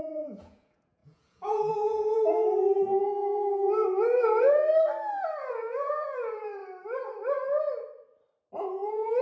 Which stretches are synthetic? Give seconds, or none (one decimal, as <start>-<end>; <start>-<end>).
0.0-4.6; 5.5-6.6; 8.6-9.2